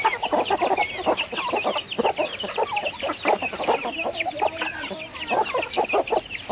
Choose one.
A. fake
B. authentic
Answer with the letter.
B